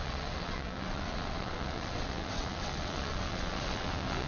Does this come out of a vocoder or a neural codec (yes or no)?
yes